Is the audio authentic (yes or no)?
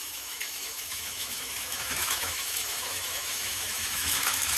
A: no